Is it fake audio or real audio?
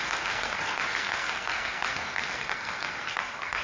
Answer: fake